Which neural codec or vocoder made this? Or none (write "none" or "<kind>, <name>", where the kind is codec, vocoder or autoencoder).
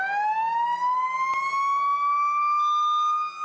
none